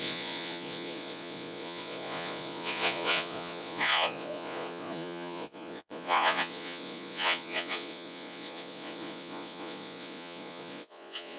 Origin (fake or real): fake